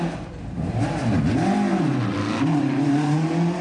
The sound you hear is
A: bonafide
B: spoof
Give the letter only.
A